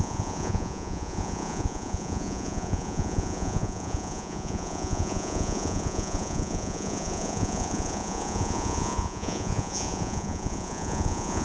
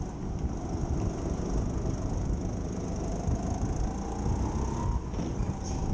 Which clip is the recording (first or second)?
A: second